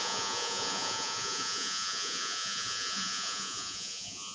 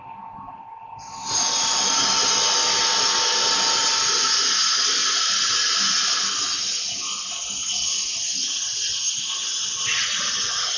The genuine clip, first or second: second